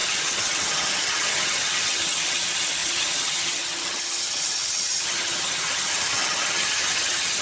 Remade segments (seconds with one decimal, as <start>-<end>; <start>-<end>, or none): 0.0-7.4